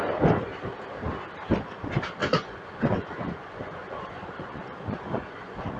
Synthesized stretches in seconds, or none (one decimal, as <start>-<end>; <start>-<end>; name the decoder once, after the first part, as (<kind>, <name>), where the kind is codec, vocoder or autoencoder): 2.2-5.8 (vocoder, Vocos)